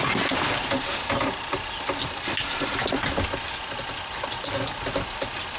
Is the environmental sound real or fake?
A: real